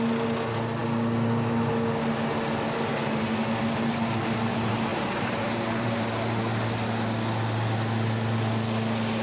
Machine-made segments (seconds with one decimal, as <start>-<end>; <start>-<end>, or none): 4.9-6.0